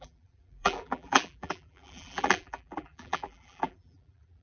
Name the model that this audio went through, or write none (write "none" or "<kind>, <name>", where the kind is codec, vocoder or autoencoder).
vocoder, BigVGAN v2